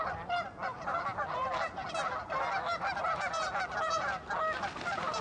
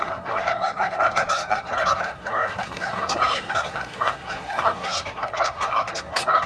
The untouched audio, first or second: first